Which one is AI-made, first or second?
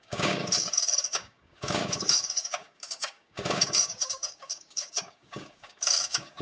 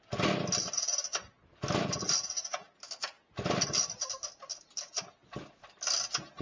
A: first